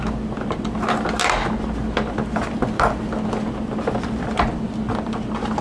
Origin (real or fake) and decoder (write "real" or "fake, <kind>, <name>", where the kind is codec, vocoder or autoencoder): real